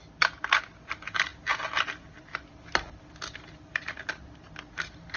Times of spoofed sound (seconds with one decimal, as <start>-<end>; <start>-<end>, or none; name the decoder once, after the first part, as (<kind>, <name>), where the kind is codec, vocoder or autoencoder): none